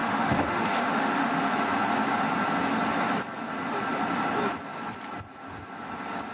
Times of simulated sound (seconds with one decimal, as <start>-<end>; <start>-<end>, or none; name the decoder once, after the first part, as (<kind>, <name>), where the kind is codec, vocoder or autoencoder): 0.0-1.5 (autoencoder, DAC-VAE)